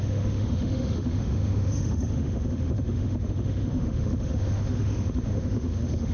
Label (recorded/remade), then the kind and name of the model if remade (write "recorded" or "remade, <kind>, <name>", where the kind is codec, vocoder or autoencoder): remade, autoencoder, DAC-VAE